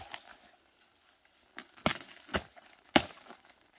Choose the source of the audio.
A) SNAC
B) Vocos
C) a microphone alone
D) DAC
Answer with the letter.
C